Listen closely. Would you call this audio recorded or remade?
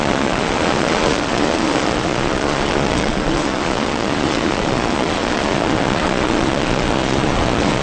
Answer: remade